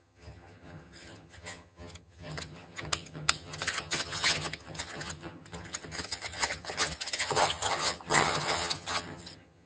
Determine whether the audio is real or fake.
fake